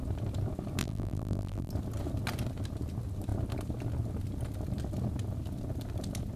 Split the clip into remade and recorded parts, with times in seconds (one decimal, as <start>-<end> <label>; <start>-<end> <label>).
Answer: 0.0-0.8 recorded; 0.8-1.7 remade; 1.7-6.4 recorded